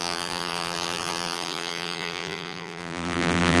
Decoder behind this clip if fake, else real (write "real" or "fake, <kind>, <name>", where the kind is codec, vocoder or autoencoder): fake, vocoder, BigVGAN v2